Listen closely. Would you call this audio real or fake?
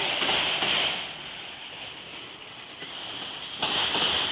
real